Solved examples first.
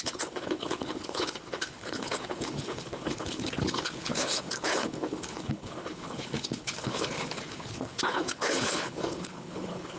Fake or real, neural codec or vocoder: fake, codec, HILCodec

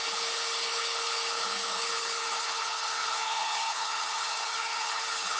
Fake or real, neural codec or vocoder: fake, codec, HILCodec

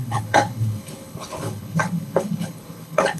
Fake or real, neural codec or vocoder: fake, codec, HILCodec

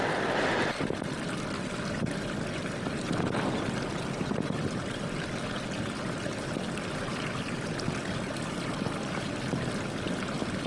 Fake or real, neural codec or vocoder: real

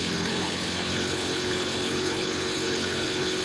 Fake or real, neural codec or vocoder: fake, codec, HILCodec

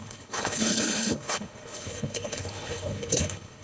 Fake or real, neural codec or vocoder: fake, codec, HILCodec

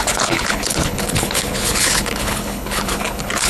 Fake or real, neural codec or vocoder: fake, codec, HILCodec